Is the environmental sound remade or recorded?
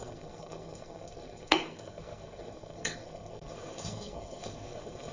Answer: remade